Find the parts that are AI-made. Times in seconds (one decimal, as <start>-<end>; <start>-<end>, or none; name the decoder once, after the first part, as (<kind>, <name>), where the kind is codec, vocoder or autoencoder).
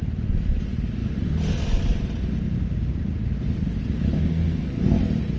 4.3-4.9 (codec, SNAC)